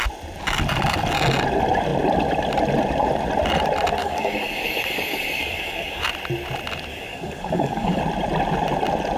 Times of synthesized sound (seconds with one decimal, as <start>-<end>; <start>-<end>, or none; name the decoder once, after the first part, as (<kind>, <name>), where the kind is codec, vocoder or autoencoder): 4.0-6.0 (codec, DAC); 6.9-8.0